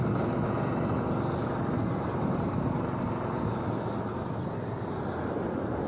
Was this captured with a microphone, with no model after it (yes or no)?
yes